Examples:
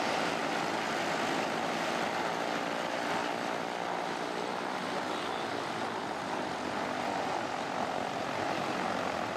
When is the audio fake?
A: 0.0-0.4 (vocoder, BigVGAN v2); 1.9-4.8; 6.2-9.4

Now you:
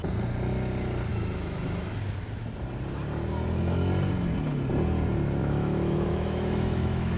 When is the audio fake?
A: 1.1-2.0 (autoencoder, DAC-VAE); 5.4-7.2